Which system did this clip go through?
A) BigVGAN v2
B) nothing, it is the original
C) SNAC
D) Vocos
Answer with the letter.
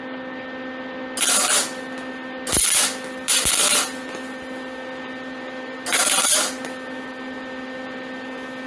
B